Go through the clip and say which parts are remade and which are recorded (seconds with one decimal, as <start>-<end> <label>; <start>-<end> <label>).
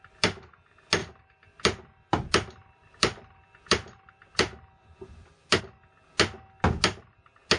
0.0-1.0 recorded; 1.0-5.6 remade; 5.6-7.6 recorded